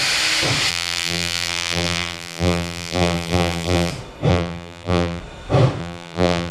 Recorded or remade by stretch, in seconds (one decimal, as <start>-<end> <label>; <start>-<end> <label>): 0.0-0.7 recorded; 0.7-3.9 remade; 3.9-4.3 recorded; 4.3-5.2 remade; 5.2-5.8 recorded; 5.8-6.5 remade